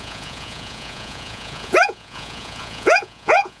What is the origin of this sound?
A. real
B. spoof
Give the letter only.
B